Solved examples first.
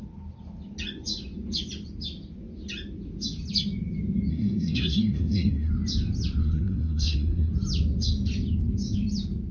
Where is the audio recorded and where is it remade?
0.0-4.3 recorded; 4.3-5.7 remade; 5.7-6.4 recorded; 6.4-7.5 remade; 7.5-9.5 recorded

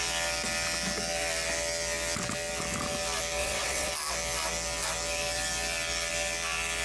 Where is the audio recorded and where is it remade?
0.0-3.4 recorded; 3.4-3.9 remade; 3.9-6.8 recorded

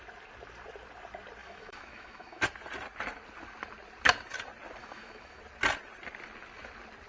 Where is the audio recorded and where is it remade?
0.0-1.4 recorded; 1.4-2.4 remade; 2.4-4.8 recorded; 4.8-5.4 remade; 5.4-7.1 recorded

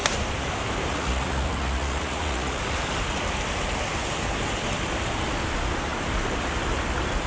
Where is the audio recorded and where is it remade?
0.0-0.9 recorded; 0.9-2.6 remade; 2.6-7.3 recorded

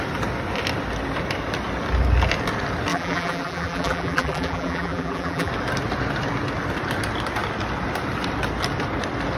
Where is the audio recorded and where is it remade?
0.0-2.9 recorded; 2.9-5.5 remade; 5.5-9.4 recorded